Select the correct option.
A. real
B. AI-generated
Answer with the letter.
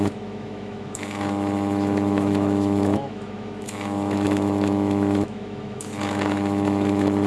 B